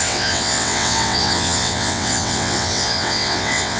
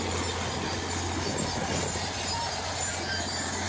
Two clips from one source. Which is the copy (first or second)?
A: first